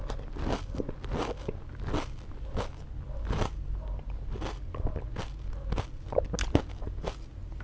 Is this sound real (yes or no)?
yes